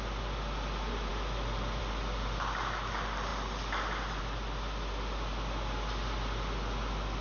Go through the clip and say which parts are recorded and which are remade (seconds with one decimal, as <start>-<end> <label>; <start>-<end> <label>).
0.0-7.2 recorded